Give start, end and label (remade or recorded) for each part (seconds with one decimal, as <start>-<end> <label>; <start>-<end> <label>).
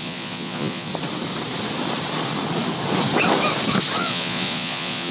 0.0-0.9 remade; 0.9-4.0 recorded; 4.0-5.1 remade